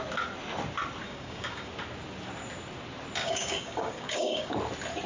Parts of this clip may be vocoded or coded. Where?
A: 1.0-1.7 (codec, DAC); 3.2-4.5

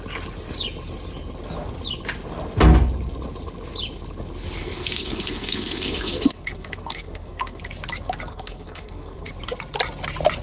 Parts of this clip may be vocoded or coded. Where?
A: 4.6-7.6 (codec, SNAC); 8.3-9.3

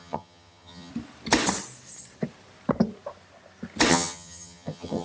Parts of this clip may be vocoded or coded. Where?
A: 0.0-0.9 (vocoder, HiFi-GAN); 3.9-5.0

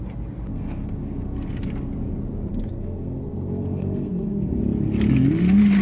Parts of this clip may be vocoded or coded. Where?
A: 0.5-1.5 (codec, SNAC); 2.5-4.6

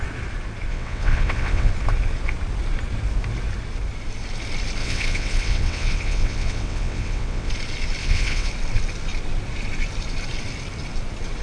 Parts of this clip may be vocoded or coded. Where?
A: 0.7-1.7 (vocoder, WaveNeXt); 4.8-7.5; 8.0-8.5

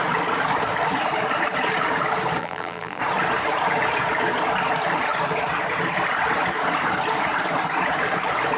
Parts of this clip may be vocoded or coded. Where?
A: 2.4-3.0 (vocoder, BigVGAN v2)